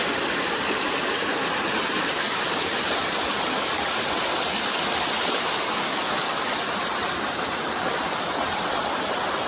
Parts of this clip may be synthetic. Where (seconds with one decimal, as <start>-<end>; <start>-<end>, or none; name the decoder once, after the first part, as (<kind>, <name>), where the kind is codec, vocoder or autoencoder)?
0.0-0.5 (vocoder, BigVGAN v2); 5.9-6.7